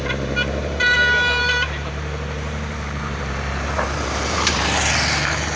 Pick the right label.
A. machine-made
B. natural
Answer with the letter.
A